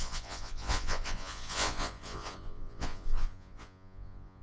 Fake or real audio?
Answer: fake